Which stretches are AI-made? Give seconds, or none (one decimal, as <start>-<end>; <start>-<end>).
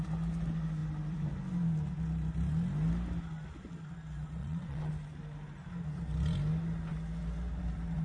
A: 4.4-4.9